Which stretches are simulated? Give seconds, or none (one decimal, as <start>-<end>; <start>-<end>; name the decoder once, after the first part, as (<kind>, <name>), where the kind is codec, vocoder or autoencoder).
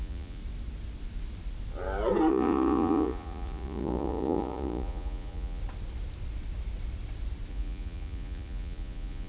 0.0-0.4 (vocoder, Vocos); 2.3-5.6; 7.5-9.3